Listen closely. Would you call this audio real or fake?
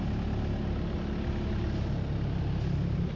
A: real